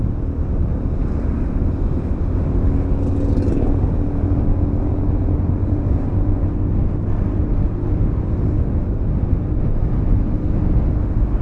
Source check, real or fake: real